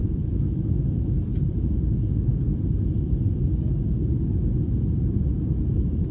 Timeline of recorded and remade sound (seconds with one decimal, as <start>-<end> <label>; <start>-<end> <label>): 0.0-1.2 remade; 1.2-6.1 recorded